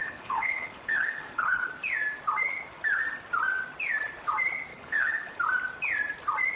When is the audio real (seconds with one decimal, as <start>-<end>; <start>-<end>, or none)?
1.7-4.7; 5.4-6.6